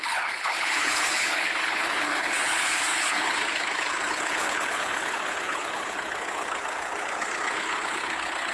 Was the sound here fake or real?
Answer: fake